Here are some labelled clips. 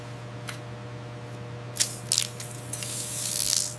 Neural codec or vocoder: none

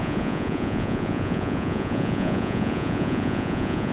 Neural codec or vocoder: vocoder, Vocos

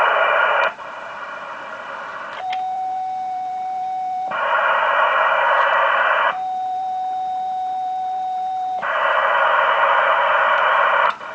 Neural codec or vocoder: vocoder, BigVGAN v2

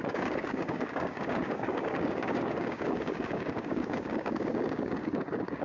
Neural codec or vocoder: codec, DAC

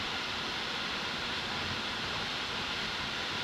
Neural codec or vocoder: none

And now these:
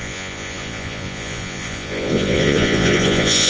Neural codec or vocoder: vocoder, Vocos